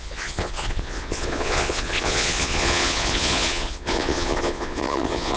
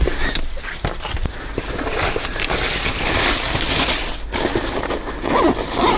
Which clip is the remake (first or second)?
first